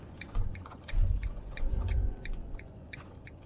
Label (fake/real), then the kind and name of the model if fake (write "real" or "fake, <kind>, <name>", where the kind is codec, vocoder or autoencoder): fake, vocoder, Vocos